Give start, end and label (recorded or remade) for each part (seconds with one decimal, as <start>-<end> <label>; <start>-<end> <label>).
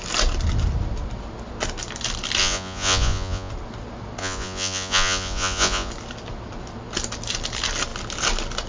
0.0-2.4 recorded; 2.4-3.5 remade; 3.5-4.2 recorded; 4.2-5.9 remade; 5.9-8.7 recorded